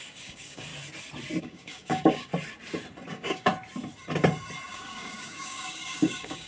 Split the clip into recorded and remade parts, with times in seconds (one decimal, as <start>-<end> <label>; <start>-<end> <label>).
0.0-0.7 remade; 0.7-1.4 recorded; 1.4-2.3 remade; 2.3-3.1 recorded; 3.1-3.5 remade; 3.5-4.7 recorded; 4.7-6.5 remade